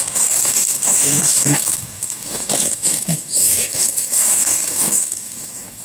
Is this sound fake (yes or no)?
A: yes